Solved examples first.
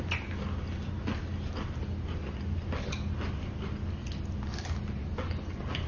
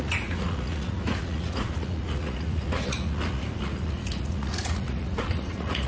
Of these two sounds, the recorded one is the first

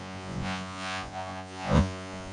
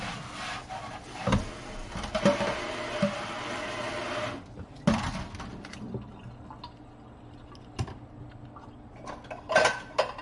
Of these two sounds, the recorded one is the second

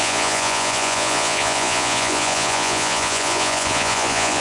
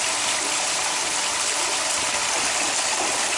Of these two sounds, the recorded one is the second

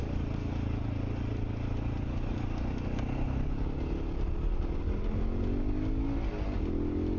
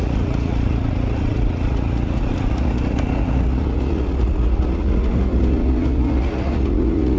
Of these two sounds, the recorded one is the first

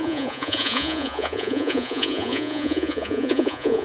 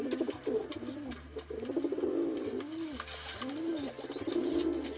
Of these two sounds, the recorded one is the second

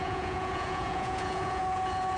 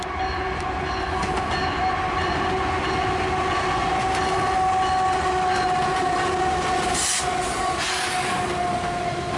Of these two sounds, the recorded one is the second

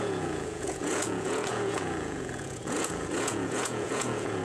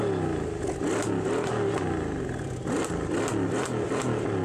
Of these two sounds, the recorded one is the second